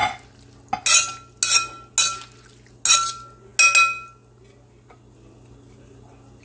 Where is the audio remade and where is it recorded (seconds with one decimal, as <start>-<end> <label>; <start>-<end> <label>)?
0.0-6.4 recorded